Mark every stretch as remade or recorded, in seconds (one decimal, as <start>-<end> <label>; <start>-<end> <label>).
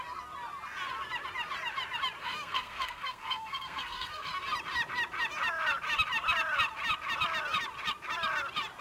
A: 0.0-2.2 recorded; 2.2-4.3 remade; 4.3-8.8 recorded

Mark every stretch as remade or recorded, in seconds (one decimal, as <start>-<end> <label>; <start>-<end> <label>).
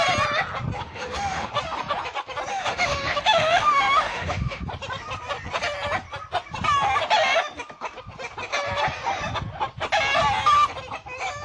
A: 0.0-0.8 recorded; 0.8-1.5 remade; 1.5-2.5 recorded; 2.5-4.6 remade; 4.6-11.4 recorded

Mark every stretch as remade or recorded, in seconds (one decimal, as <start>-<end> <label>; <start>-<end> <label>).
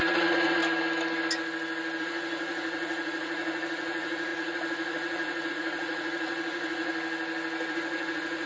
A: 0.0-0.6 remade; 0.6-2.0 recorded; 2.0-6.9 remade; 6.9-7.7 recorded; 7.7-8.5 remade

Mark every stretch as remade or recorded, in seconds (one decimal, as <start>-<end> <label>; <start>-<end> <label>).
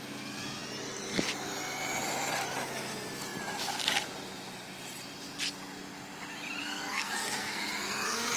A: 0.0-6.6 recorded; 6.6-8.4 remade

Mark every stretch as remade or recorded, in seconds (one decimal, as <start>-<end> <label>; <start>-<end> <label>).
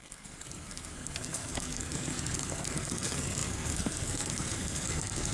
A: 0.0-5.3 remade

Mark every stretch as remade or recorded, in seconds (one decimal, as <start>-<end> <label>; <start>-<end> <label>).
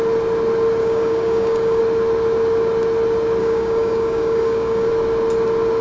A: 0.0-0.8 recorded; 0.8-1.8 remade; 1.8-3.4 recorded; 3.4-4.9 remade; 4.9-5.8 recorded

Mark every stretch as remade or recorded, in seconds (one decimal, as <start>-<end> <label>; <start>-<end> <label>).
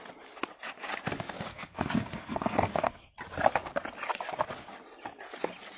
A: 0.0-1.5 recorded; 1.5-3.1 remade; 3.1-5.8 recorded